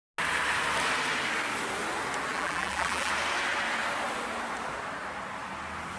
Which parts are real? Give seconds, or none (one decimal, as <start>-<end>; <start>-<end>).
0.0-2.3; 3.1-6.0